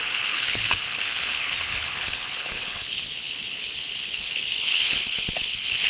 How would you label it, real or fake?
fake